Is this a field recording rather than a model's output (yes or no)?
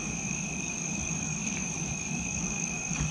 no